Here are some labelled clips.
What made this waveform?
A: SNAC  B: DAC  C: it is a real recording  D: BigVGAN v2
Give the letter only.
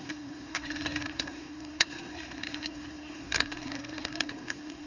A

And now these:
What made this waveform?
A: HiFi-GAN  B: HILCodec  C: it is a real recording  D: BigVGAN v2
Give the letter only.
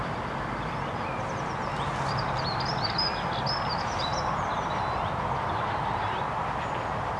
C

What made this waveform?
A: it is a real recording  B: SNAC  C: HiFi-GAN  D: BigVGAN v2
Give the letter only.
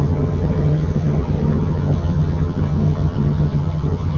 C